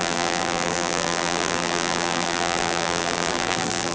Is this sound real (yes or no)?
no